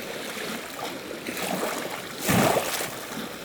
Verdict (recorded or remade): recorded